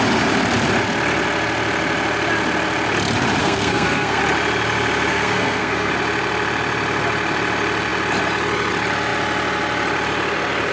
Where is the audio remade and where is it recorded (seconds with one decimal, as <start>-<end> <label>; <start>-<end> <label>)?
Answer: 0.0-3.4 recorded; 3.4-4.2 remade; 4.2-5.1 recorded; 5.1-5.9 remade; 5.9-10.7 recorded